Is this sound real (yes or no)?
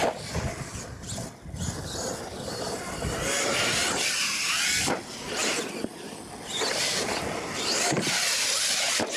yes